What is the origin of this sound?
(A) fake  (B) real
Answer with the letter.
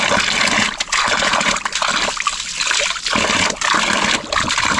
B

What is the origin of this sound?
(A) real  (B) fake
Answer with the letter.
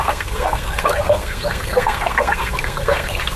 B